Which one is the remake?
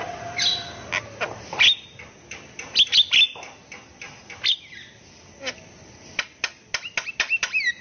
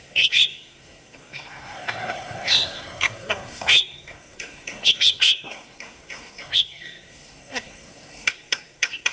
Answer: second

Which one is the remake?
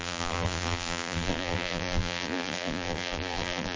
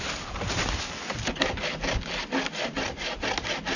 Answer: first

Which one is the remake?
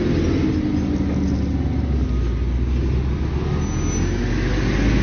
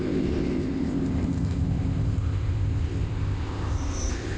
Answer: second